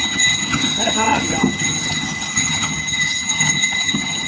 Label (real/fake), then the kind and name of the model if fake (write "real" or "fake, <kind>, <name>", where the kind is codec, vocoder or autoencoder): fake, vocoder, HiFi-GAN